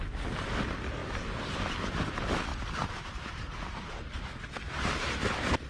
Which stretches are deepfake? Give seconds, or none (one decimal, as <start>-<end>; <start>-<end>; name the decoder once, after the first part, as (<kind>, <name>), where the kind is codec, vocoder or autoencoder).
none